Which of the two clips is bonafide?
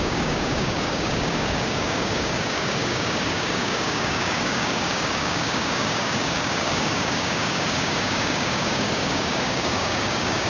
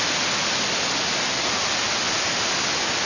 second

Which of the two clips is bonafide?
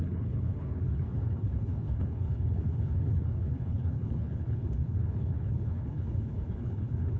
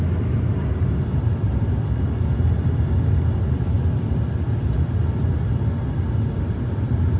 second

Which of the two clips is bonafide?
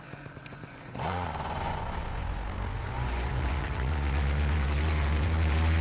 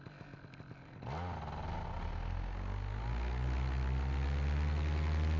second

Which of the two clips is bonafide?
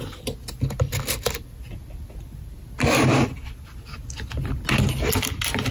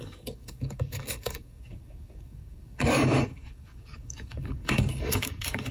first